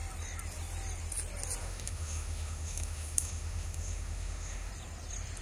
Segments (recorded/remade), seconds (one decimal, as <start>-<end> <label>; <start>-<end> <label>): 0.0-1.6 recorded; 1.6-4.7 remade; 4.7-5.4 recorded